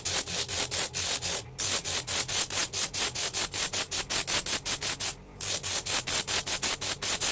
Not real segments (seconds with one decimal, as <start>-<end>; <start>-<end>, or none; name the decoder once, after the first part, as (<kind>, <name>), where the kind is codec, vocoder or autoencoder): none